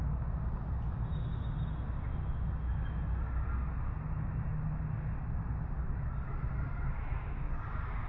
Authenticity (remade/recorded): recorded